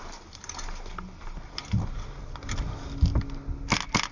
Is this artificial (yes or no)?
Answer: no